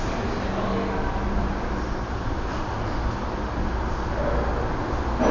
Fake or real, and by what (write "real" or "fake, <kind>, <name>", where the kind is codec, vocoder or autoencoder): real